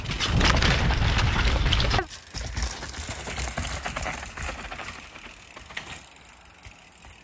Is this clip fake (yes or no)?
no